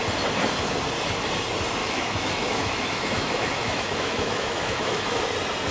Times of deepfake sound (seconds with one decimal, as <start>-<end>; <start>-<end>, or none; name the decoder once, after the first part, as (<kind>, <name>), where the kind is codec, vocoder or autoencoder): 1.8-5.2 (autoencoder, DAC-VAE)